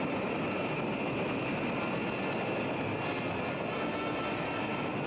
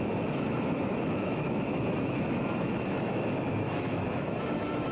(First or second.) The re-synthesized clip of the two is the second